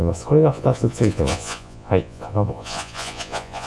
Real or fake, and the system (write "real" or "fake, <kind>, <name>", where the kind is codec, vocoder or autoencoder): fake, vocoder, Vocos